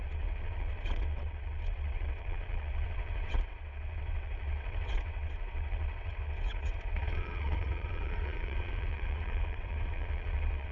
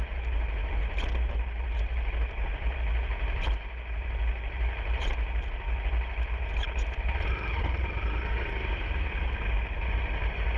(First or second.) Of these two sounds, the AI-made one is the first